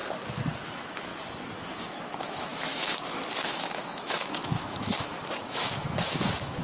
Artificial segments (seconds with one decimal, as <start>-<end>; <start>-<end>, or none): 0.7-1.1; 1.8-6.6